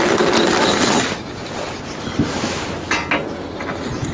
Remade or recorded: recorded